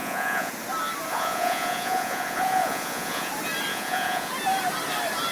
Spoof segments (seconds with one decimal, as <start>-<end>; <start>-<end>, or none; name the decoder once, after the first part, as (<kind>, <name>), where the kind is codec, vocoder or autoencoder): 0.0-0.5 (vocoder, Vocos); 1.1-3.3; 3.7-4.3